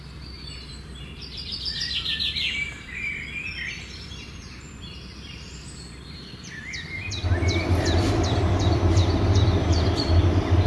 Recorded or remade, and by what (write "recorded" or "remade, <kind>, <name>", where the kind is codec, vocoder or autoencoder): remade, vocoder, BigVGAN v2